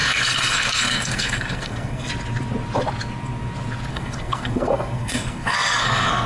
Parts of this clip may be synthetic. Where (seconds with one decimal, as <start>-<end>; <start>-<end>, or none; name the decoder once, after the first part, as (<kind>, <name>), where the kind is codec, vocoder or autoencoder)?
0.0-2.1 (codec, SNAC); 3.9-6.3